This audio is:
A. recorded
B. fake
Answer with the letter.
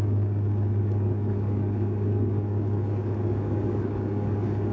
B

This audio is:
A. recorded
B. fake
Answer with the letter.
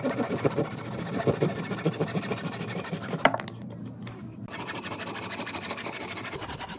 A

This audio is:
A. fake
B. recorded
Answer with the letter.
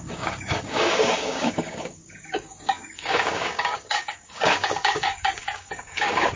A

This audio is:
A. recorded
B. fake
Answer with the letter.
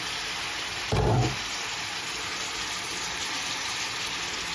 A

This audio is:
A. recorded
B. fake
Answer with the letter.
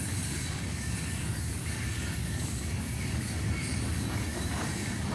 B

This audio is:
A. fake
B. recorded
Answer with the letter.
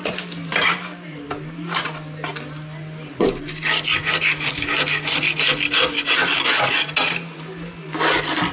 B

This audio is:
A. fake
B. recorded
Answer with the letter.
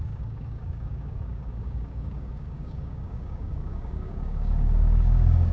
A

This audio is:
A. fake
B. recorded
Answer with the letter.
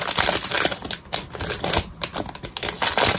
B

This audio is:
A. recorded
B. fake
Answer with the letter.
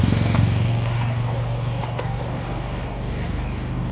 B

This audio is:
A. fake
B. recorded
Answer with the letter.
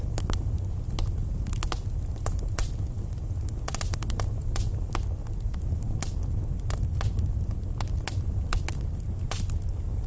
B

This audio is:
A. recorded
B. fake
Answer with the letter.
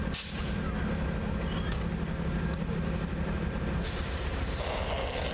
A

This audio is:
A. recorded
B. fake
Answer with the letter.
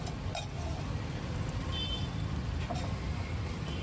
A